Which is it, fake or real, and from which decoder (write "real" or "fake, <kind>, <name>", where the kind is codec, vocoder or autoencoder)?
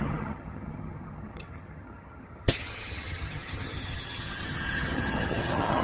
fake, vocoder, HiFi-GAN